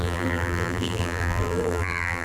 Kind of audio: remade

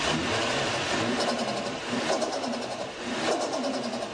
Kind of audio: recorded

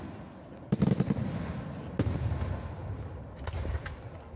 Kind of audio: recorded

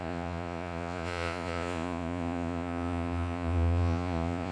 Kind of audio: remade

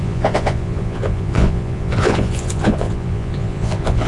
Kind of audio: remade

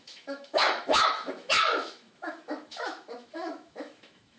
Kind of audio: remade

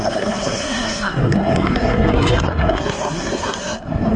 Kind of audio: remade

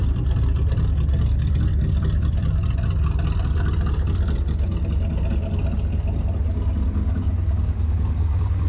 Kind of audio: recorded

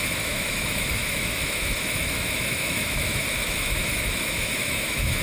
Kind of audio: remade